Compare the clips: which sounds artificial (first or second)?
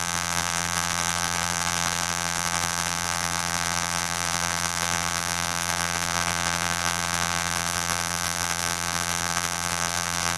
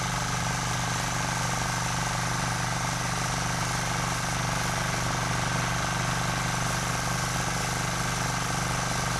first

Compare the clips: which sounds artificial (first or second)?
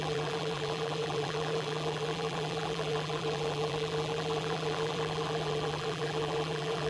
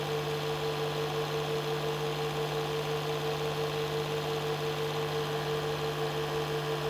first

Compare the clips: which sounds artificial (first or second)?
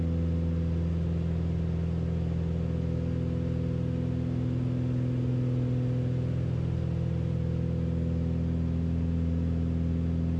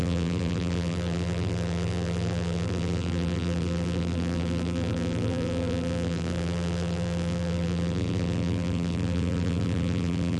second